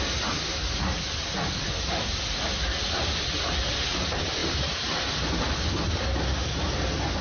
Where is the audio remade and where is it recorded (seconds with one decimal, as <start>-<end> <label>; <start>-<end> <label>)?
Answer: 0.0-7.2 recorded